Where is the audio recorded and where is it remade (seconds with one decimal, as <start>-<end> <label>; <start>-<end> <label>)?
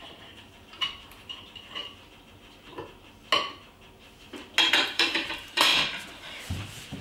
0.0-1.8 remade; 1.8-2.3 recorded; 2.3-2.7 remade; 2.7-4.7 recorded; 4.7-5.7 remade; 5.7-6.4 recorded; 6.4-7.0 remade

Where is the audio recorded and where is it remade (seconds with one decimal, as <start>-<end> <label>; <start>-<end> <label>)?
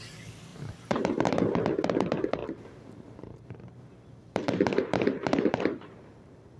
0.0-0.5 recorded; 0.5-1.4 remade; 1.4-2.4 recorded; 2.4-6.6 remade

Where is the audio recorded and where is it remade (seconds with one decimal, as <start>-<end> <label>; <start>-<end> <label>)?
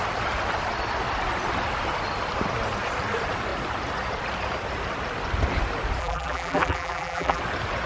0.0-6.0 recorded; 6.0-7.4 remade; 7.4-7.9 recorded